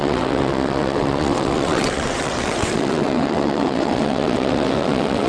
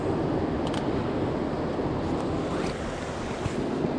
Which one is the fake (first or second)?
first